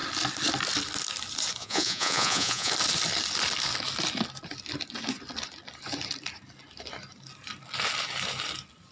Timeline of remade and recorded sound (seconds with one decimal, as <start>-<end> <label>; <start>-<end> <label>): 0.0-1.6 recorded; 1.6-2.7 remade; 2.7-8.9 recorded